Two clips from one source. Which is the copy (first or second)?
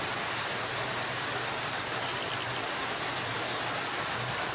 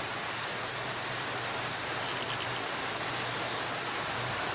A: first